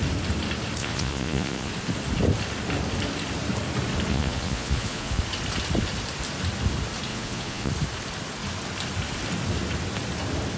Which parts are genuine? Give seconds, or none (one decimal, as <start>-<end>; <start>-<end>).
0.0-0.8; 1.7-4.1; 5.2-7.1; 7.7-10.6